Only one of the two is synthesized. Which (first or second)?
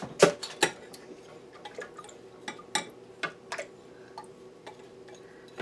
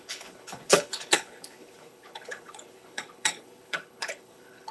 second